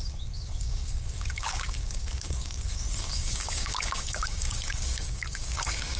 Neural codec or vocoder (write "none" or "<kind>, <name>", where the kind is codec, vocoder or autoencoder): codec, DAC